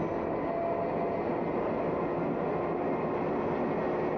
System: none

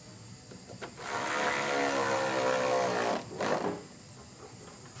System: none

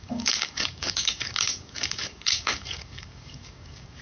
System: codec, DAC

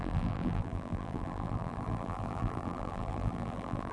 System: vocoder, BigVGAN v2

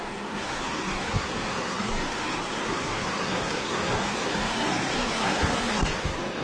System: codec, SNAC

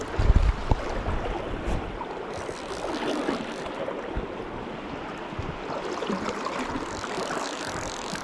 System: none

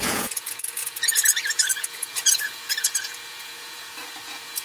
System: vocoder, Vocos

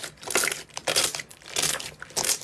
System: none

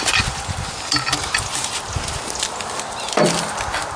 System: none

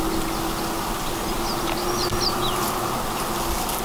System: none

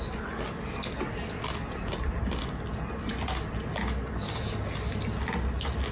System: none